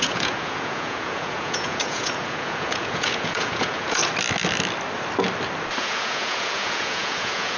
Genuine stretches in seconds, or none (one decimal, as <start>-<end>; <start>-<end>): 4.0-5.8